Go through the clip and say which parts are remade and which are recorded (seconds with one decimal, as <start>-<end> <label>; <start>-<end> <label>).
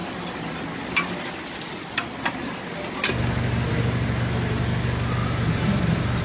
0.0-5.2 recorded; 5.2-6.2 remade